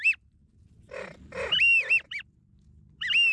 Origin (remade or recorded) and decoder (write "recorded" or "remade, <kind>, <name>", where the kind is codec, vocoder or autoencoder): recorded